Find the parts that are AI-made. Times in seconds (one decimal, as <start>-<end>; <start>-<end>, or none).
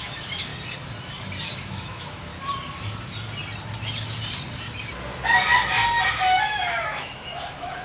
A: 0.0-0.5; 1.4-2.3; 6.1-7.8